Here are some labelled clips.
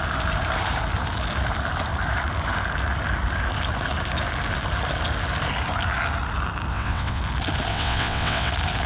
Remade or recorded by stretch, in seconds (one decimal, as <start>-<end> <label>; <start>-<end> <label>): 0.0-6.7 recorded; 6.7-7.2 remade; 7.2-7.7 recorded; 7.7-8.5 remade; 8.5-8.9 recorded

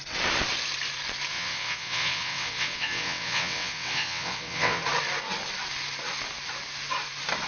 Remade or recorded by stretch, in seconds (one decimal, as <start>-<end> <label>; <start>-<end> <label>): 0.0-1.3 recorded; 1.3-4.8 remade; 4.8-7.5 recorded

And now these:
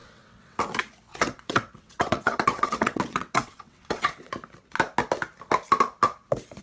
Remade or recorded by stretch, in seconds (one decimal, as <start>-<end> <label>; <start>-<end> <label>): 0.0-0.6 remade; 0.6-1.1 recorded; 1.1-4.3 remade; 4.3-6.6 recorded

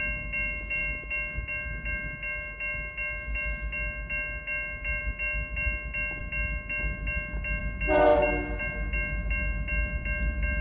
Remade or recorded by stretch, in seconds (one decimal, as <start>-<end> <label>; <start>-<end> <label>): 0.0-10.6 recorded

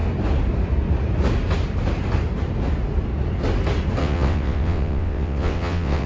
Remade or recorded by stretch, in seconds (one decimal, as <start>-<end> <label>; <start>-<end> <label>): 0.0-4.0 recorded; 4.0-6.1 remade

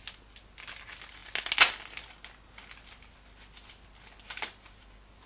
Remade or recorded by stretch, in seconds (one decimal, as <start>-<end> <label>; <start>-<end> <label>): 0.0-5.3 recorded

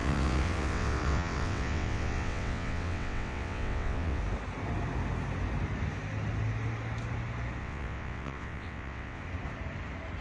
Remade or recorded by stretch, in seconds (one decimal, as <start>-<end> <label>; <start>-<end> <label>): 0.0-4.2 remade; 4.2-7.6 recorded; 7.6-9.2 remade; 9.2-10.2 recorded